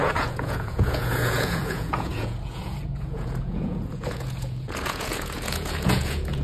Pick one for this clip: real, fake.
fake